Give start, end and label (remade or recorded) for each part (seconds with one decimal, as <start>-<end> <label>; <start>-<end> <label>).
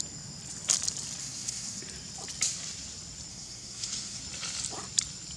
0.0-1.2 recorded; 1.2-1.8 remade; 1.8-3.3 recorded; 3.3-4.2 remade; 4.2-5.4 recorded